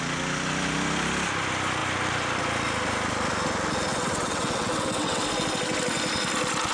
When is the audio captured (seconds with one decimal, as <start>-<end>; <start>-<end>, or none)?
0.0-3.9; 5.2-6.7